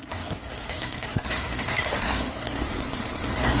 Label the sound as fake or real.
fake